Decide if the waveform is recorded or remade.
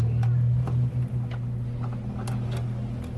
recorded